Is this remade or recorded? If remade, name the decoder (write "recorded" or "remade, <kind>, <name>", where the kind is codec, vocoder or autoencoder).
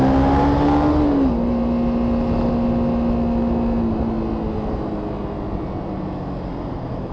recorded